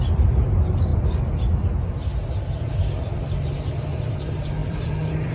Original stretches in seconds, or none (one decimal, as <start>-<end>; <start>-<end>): 0.9-4.1